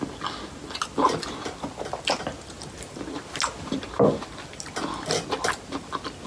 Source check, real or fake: real